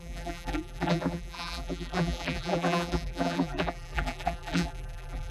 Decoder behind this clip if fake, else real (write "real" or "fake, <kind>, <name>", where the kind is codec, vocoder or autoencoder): fake, vocoder, BigVGAN v2